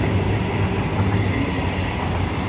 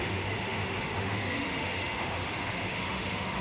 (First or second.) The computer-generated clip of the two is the second